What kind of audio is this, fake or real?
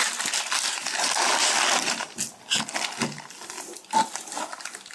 real